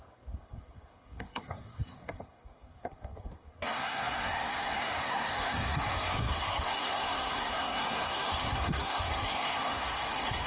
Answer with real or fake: fake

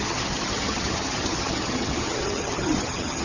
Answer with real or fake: fake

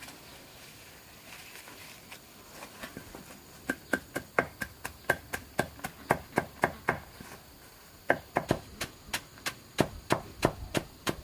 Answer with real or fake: real